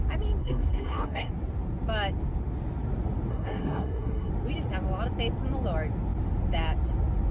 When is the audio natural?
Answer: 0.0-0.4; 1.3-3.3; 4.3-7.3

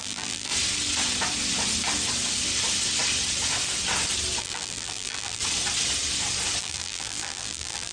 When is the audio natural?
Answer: 0.5-4.4; 5.4-6.6